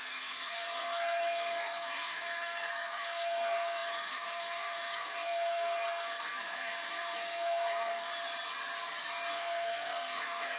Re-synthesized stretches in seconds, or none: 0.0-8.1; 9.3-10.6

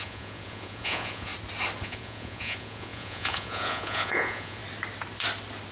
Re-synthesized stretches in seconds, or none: 0.0-1.3; 1.8-4.6